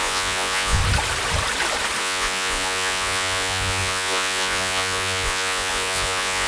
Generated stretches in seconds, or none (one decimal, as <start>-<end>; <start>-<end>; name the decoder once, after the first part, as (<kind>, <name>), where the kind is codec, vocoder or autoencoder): 0.0-0.8 (vocoder, Vocos); 2.0-6.5